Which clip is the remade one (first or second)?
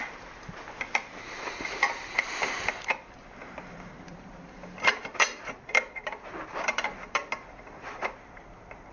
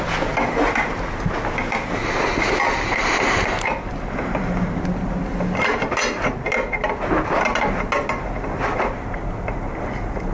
first